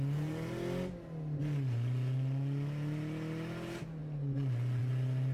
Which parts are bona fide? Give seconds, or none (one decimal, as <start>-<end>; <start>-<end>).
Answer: 0.0-5.3

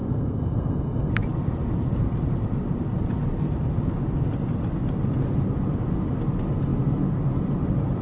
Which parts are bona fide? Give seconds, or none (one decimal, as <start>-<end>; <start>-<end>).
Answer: 1.1-8.0

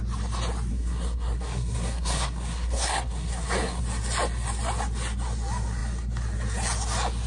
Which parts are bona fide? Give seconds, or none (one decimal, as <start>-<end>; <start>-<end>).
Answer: 0.0-0.7; 3.8-7.3

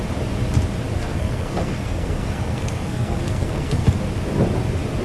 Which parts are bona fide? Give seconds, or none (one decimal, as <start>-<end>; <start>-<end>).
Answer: 0.0-0.9; 3.9-5.0